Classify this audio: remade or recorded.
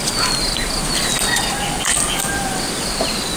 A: recorded